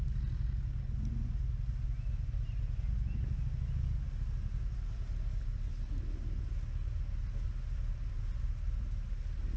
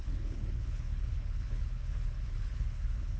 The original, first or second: first